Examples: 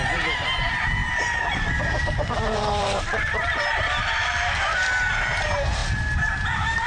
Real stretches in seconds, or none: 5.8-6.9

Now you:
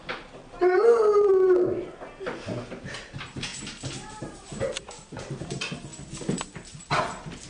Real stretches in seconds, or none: 1.3-2.7; 3.5-4.1; 5.9-7.5

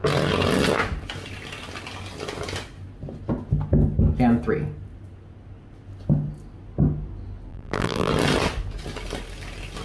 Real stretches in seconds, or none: 0.0-7.5; 8.1-9.8